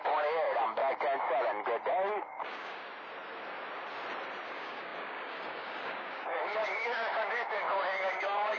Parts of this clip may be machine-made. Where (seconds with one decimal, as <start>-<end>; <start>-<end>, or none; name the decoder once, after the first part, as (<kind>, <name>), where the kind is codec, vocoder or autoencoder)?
0.0-0.8 (codec, DAC); 1.9-2.9; 4.5-8.6